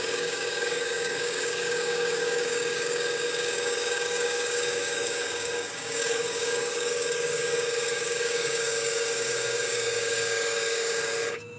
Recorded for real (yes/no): no